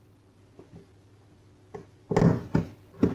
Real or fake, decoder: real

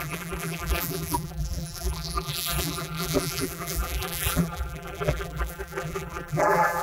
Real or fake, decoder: fake, vocoder, BigVGAN v2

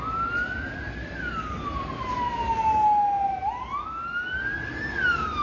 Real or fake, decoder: real